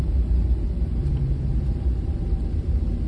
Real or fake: fake